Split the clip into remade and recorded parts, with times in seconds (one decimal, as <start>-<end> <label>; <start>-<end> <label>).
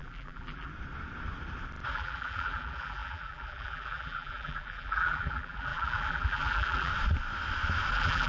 0.0-0.7 remade; 0.7-1.9 recorded; 1.9-6.9 remade; 6.9-7.9 recorded; 7.9-8.3 remade